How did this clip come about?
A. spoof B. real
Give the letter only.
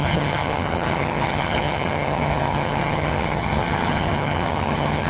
A